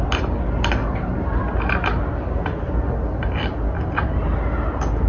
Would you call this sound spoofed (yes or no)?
no